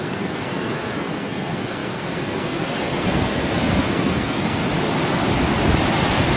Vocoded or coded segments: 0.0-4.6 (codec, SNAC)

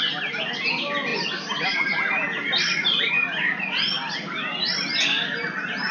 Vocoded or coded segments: none